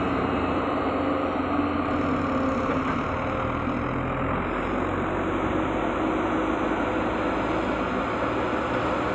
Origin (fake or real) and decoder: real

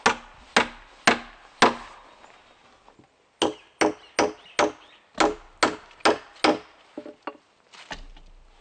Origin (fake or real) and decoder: real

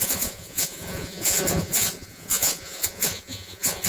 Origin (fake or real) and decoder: fake, vocoder, Vocos